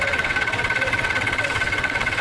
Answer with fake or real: fake